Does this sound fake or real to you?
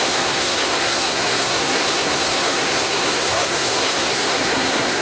fake